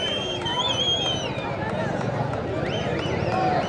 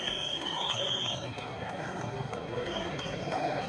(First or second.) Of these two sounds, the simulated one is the second